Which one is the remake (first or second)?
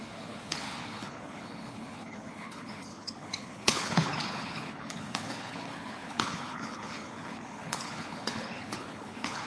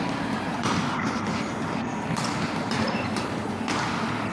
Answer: first